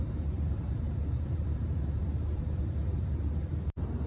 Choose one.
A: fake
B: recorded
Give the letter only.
A